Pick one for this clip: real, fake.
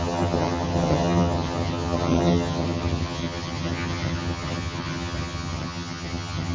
fake